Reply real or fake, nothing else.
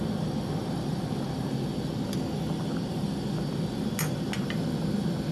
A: real